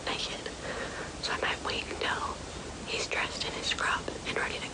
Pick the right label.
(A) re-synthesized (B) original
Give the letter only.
B